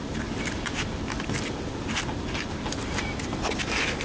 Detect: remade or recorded recorded